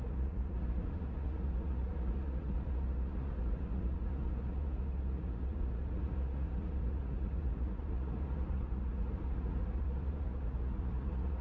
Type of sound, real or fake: fake